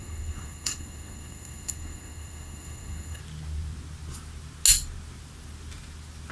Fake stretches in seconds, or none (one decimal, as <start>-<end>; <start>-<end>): 0.0-3.2